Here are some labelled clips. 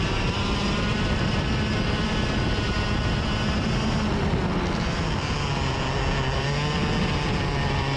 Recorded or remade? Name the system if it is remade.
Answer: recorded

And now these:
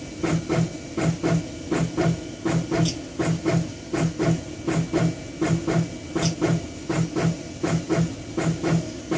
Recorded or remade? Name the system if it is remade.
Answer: recorded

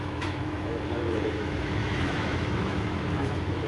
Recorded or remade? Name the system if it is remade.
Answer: remade, autoencoder, DAC-VAE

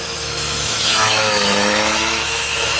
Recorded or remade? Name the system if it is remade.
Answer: remade, autoencoder, DAC-VAE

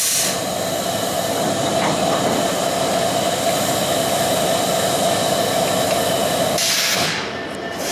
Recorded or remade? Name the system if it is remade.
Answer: recorded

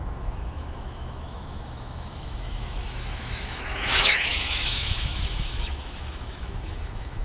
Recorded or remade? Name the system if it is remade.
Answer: remade, autoencoder, DAC-VAE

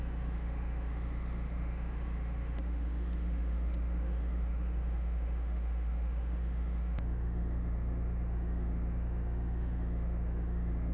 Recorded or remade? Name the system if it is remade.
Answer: remade, autoencoder, DAC-VAE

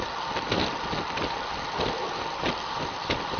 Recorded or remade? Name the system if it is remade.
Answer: recorded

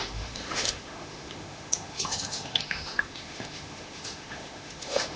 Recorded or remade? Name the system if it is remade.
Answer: remade, autoencoder, DAC-VAE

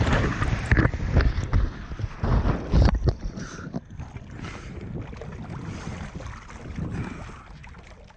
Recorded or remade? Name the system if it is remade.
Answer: recorded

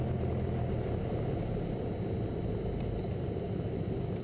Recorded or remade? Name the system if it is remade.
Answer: recorded